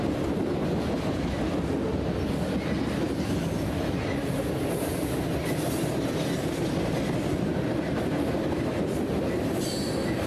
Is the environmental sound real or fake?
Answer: real